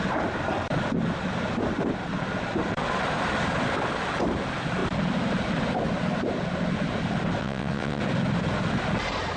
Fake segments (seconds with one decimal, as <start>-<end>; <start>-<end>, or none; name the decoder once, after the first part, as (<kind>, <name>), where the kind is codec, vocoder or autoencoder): 7.4-8.0 (vocoder, WaveNeXt)